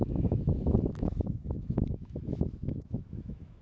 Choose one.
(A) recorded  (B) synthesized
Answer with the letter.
B